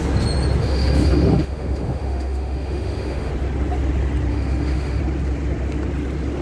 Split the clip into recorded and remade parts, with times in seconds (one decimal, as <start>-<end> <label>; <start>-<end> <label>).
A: 0.0-0.6 recorded; 0.6-3.3 remade; 3.3-4.3 recorded; 4.3-5.0 remade; 5.0-6.4 recorded